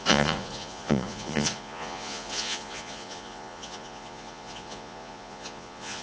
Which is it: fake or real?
fake